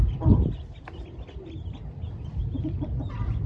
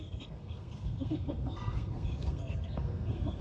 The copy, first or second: second